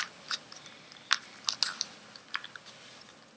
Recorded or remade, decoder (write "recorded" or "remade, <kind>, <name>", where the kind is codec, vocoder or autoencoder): recorded